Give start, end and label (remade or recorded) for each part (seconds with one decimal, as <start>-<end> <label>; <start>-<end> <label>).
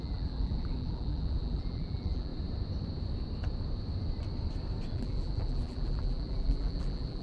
0.0-2.3 remade; 2.3-4.9 recorded; 4.9-7.2 remade